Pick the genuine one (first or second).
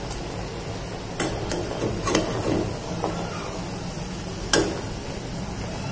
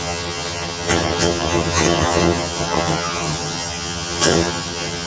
first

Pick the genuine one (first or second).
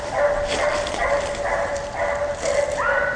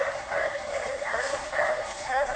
first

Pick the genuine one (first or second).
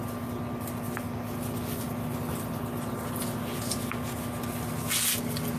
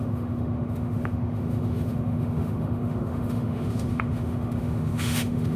first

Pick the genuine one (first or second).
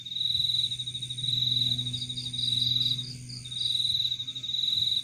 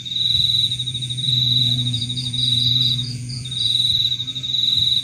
first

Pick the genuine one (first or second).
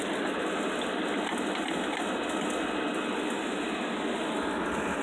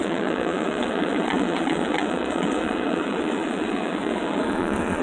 first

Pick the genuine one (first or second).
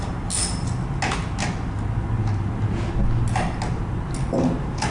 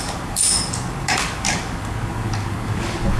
first